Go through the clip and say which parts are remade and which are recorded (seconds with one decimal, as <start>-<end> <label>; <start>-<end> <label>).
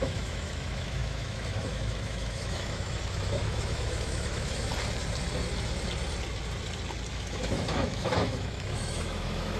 0.0-4.7 remade; 4.7-7.1 recorded; 7.1-9.6 remade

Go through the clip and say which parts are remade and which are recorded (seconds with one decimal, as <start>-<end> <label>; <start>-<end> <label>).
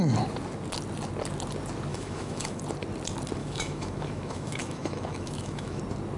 0.0-1.9 recorded; 1.9-2.6 remade; 2.6-3.4 recorded; 3.4-5.8 remade; 5.8-6.2 recorded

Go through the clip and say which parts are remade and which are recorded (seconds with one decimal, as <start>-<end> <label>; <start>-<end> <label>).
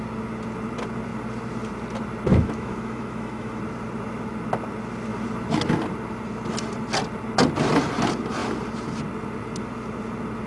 0.0-2.3 recorded; 2.3-3.6 remade; 3.6-10.5 recorded